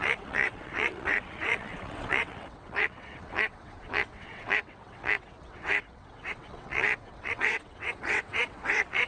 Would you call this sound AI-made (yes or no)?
yes